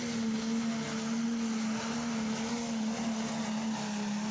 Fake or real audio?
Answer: real